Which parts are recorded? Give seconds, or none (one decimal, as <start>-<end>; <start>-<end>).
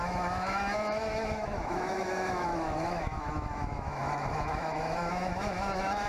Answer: none